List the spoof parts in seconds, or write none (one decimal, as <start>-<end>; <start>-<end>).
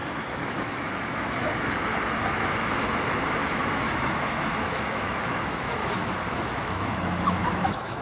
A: 0.0-8.0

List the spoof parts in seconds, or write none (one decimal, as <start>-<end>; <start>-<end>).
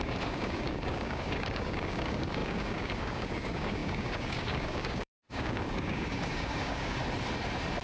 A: 0.0-7.0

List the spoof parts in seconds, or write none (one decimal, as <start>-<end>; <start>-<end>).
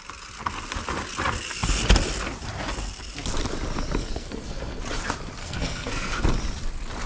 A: 4.0-4.8; 5.4-6.2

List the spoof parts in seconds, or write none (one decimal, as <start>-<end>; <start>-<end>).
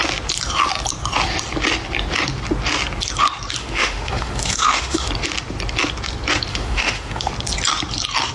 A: 3.6-5.1; 6.5-7.3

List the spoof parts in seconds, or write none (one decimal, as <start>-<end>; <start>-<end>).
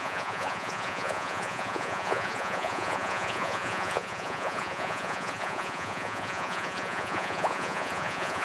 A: 0.0-8.4